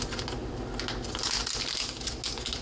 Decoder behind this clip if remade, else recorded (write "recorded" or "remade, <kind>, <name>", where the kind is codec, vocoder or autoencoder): recorded